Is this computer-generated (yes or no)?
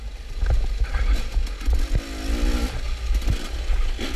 no